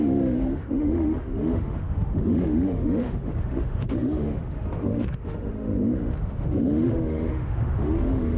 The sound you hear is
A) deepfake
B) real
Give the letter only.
A